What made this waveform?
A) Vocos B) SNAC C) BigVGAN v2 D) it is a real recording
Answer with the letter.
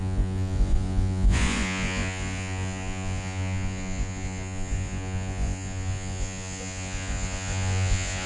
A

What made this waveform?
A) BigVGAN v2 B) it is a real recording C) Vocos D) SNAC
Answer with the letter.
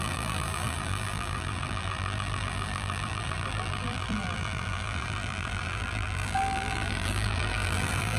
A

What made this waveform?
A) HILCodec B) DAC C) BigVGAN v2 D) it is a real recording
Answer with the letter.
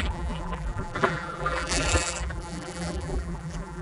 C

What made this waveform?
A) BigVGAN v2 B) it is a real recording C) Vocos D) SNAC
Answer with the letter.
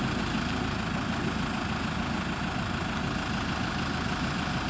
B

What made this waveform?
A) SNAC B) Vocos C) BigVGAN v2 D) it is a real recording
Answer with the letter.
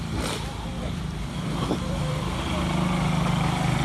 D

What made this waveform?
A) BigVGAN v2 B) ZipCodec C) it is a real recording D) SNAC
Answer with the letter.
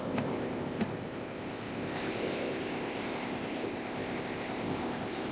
B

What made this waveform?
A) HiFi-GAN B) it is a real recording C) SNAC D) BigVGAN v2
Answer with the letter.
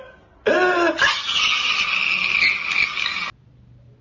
B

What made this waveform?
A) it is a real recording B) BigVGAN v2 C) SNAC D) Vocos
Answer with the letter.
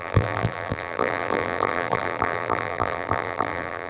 B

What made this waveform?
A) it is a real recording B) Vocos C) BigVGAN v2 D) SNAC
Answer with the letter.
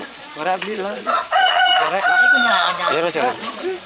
B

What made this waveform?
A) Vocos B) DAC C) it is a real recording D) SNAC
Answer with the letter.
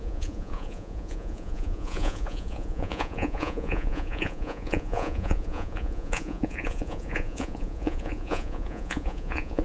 A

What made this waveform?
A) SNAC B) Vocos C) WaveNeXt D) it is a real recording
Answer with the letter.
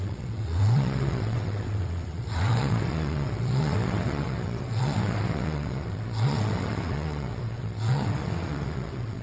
C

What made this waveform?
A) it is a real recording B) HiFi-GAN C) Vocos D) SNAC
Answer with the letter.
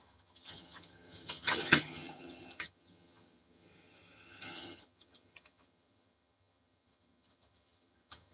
B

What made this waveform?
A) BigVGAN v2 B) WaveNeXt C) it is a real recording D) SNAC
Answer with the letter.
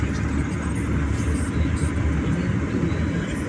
C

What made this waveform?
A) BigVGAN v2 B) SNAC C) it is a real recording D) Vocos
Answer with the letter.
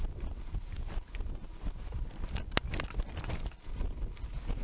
C